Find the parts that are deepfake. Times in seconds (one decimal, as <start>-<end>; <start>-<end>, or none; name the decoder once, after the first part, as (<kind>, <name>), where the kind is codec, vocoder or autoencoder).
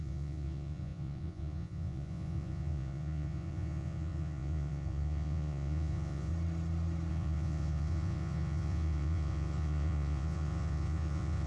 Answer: 0.0-6.3 (vocoder, Vocos); 7.1-11.5